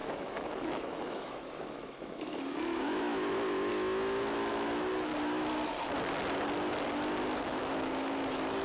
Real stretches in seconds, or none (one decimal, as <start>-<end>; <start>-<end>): 3.7-4.5; 5.1-7.4